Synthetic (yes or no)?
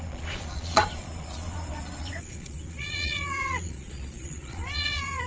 yes